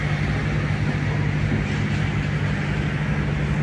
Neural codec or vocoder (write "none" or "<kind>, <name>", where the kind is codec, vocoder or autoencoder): none